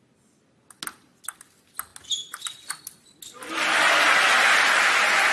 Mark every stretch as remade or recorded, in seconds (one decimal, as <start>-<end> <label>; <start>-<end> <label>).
0.0-5.3 recorded